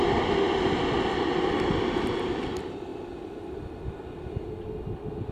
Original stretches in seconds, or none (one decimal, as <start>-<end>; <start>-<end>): 0.0-5.3